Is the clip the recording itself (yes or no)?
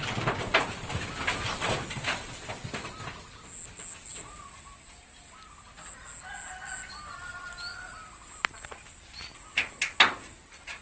yes